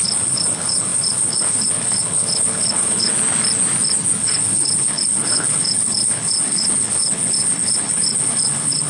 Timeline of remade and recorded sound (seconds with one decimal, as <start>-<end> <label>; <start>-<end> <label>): 0.0-3.1 remade; 3.1-4.2 recorded; 4.2-8.9 remade